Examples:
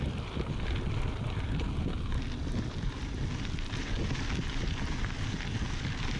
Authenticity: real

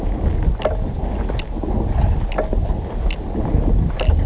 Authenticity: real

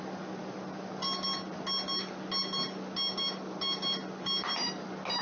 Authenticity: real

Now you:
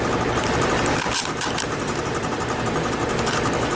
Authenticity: fake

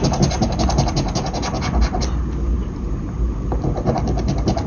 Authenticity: real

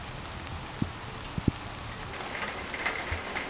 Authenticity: real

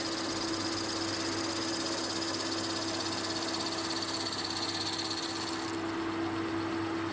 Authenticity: real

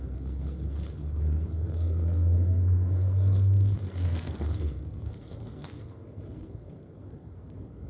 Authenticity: fake